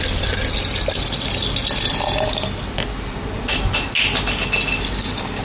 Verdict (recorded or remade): recorded